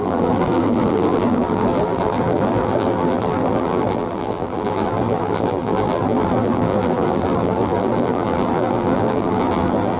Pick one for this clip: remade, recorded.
remade